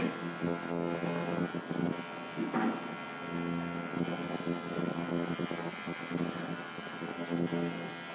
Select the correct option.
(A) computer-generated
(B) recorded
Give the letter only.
B